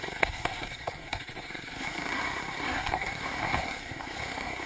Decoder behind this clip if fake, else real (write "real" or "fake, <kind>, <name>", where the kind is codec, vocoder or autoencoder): fake, codec, SNAC